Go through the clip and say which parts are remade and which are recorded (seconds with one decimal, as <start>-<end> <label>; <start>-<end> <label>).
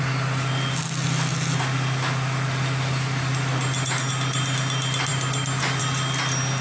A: 0.0-6.6 recorded